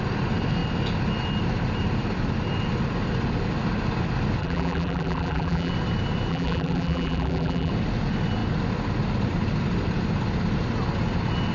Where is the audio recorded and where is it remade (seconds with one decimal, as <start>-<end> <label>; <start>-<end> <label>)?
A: 0.0-4.4 recorded; 4.4-5.7 remade; 5.7-6.3 recorded; 6.3-7.7 remade; 7.7-11.5 recorded